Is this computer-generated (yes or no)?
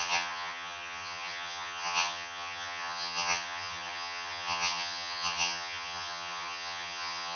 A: yes